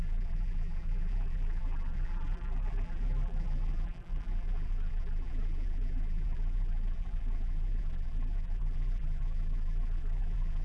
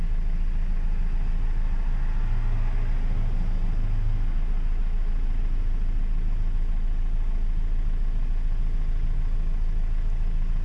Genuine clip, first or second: second